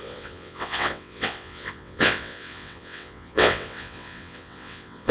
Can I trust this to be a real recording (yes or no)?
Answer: no